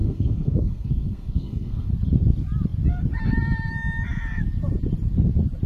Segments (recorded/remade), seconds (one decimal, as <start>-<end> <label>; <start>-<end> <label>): 0.0-1.9 remade; 1.9-5.7 recorded